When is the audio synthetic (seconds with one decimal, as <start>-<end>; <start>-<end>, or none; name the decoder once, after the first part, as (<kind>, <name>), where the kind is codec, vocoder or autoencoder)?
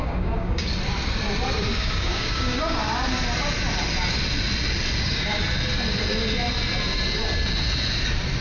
0.0-0.7 (codec, DAC); 1.8-2.8; 5.0-5.4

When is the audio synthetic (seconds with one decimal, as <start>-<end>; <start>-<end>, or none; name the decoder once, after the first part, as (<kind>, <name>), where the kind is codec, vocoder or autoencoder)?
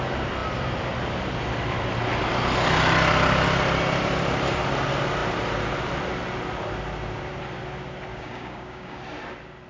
8.1-9.0 (codec, DAC)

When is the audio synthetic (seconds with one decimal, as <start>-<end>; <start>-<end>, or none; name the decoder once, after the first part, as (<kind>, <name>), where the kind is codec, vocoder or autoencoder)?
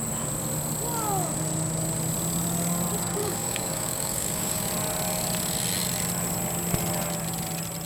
3.2-4.7 (codec, DAC)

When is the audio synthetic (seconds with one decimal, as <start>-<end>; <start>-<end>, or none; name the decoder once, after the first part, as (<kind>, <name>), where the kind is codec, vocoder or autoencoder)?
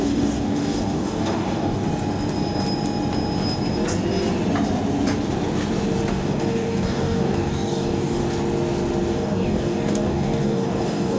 0.0-1.9 (codec, DAC); 6.1-8.2; 9.1-11.2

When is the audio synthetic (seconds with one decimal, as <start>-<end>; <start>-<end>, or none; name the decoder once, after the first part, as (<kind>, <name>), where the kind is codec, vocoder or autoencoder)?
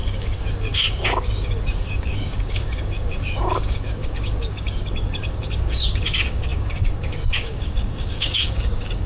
0.0-9.1 (codec, DAC)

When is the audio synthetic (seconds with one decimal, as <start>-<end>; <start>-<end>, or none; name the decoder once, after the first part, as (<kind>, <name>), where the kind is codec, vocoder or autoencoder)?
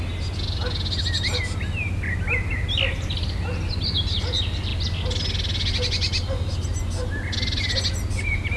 none